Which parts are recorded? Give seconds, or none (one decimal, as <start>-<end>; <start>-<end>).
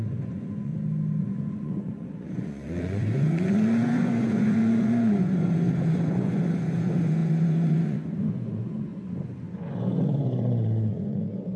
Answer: 0.7-1.2